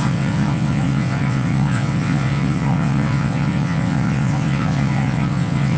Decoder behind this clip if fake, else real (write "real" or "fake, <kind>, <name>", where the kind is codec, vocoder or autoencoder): fake, vocoder, WaveNeXt